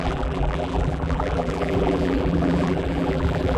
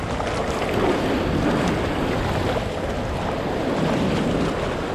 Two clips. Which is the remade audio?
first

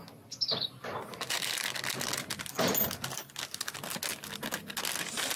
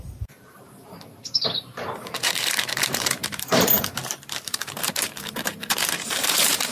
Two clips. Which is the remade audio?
second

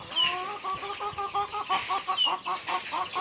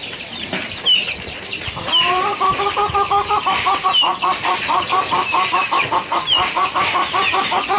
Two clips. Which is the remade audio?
second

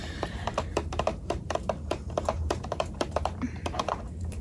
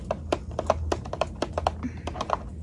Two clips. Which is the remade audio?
first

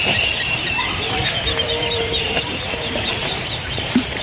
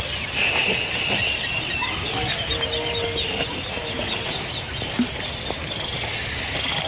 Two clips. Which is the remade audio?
first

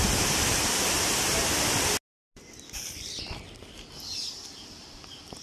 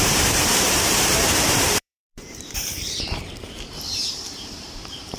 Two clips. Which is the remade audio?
second